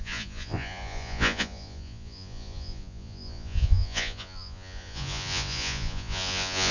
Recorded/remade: remade